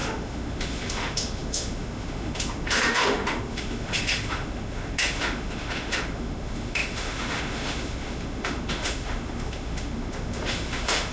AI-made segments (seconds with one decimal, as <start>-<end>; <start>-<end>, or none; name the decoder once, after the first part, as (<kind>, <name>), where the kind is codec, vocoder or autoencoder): 0.0-11.1 (autoencoder, DAC-VAE)